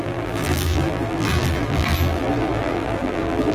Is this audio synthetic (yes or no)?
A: yes